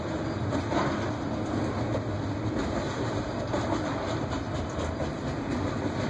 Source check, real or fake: real